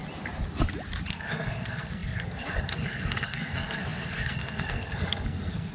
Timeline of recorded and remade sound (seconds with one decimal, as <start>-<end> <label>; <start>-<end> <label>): 0.0-1.1 recorded; 1.1-5.7 remade